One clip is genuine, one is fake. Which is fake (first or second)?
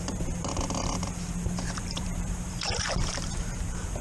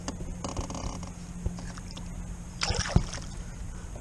first